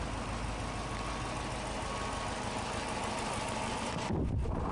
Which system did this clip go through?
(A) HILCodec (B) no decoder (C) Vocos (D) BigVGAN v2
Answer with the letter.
B